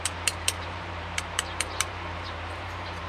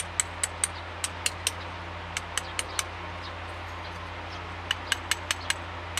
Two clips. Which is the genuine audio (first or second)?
second